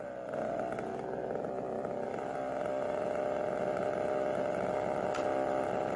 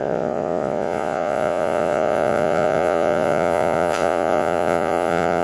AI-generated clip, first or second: second